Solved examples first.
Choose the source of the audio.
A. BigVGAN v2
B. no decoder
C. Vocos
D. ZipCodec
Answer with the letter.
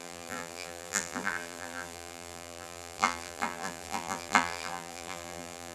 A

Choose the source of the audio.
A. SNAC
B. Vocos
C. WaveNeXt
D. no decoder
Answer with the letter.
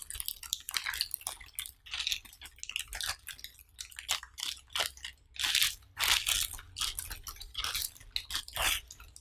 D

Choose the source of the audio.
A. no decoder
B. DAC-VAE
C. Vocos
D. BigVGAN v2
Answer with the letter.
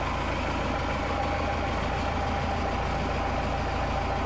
A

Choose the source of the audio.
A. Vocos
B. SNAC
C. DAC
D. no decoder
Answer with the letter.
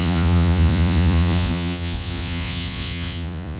A